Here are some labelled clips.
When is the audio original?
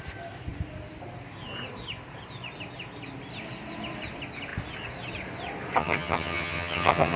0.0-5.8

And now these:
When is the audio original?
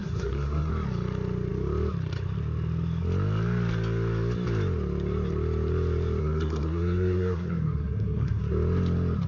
0.7-6.2; 8.4-9.3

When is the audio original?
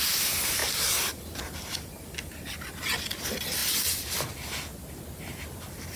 0.0-6.0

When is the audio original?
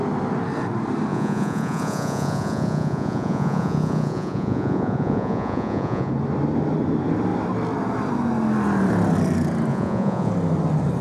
0.0-1.1; 6.1-9.7; 10.3-11.0